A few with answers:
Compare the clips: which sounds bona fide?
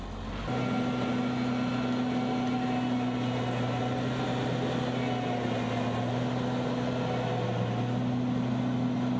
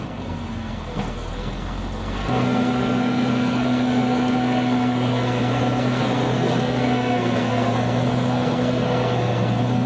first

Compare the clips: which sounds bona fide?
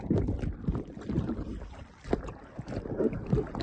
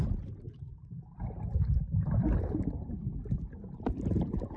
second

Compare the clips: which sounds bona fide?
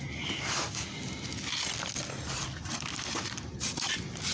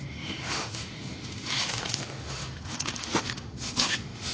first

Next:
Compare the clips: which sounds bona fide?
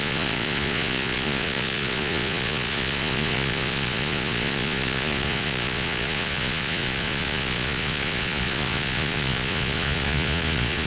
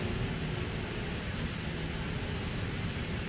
second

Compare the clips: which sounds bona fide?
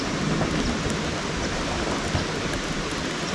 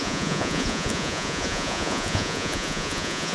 first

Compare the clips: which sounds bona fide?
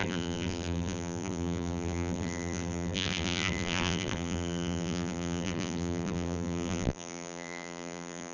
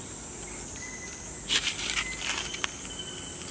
second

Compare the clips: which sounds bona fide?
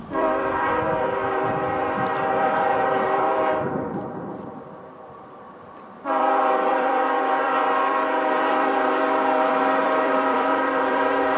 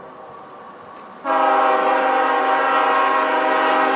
second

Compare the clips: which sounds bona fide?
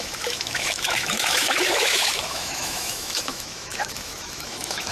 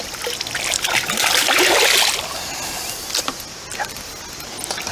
second